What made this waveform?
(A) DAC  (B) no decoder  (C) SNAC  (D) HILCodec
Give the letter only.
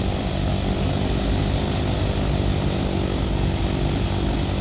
B